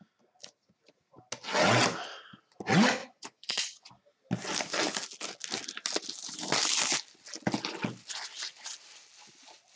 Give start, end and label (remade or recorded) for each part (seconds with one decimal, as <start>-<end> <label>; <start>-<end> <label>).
0.0-3.0 recorded; 3.0-3.9 remade; 3.9-9.8 recorded